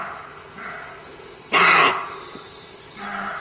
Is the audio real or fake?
real